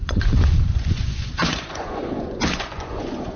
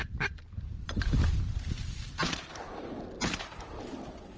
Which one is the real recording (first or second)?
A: second